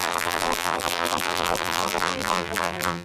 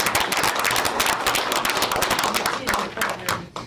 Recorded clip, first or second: second